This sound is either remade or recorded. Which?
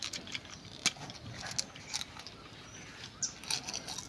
recorded